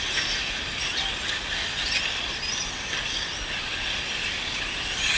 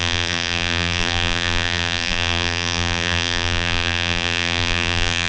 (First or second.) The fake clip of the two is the second